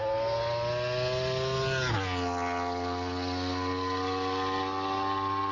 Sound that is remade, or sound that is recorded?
recorded